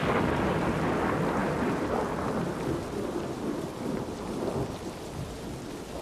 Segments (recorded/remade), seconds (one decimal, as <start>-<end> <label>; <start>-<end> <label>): 0.0-1.4 recorded; 1.4-5.0 remade; 5.0-6.0 recorded